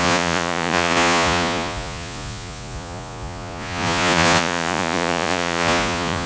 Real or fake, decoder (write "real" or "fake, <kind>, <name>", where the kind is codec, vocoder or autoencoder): fake, vocoder, Vocos